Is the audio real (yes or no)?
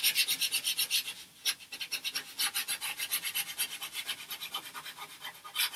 yes